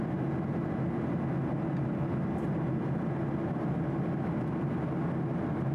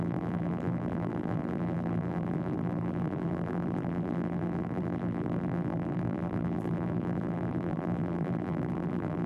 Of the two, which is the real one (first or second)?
first